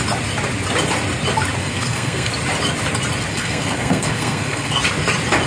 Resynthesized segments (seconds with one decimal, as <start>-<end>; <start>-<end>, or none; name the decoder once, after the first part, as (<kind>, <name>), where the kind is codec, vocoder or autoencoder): 1.6-2.3 (codec, SNAC); 3.3-4.7